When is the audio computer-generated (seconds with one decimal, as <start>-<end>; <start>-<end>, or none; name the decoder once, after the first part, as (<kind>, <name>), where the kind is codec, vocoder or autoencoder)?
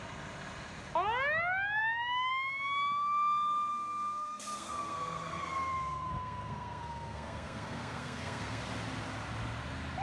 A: 3.7-8.6 (codec, SNAC)